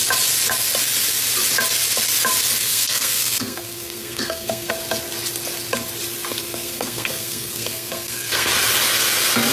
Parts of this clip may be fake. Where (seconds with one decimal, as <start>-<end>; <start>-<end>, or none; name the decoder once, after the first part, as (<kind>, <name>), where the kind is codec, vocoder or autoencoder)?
2.6-4.7 (codec, SNAC); 6.3-8.5